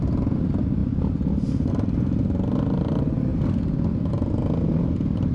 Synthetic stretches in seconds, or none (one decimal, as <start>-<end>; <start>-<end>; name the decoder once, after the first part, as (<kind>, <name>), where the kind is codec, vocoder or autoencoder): none